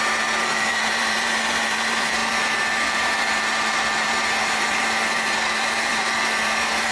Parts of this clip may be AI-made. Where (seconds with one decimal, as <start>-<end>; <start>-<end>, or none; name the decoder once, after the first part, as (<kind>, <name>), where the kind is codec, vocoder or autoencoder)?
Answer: 0.0-6.9 (vocoder, BigVGAN v2)